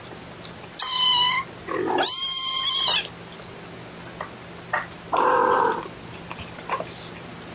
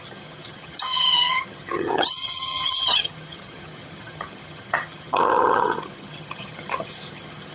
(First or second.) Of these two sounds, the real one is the first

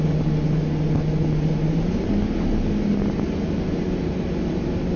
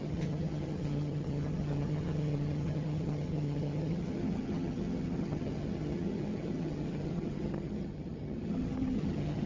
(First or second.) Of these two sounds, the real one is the first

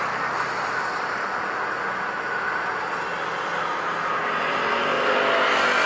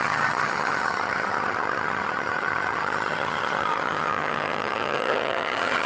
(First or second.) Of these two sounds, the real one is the first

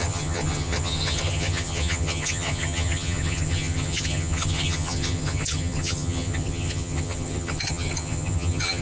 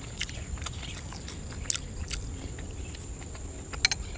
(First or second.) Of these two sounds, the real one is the second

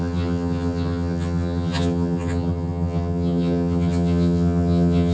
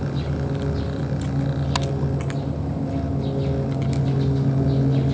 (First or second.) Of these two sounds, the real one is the second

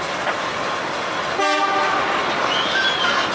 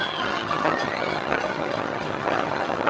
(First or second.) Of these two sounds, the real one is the first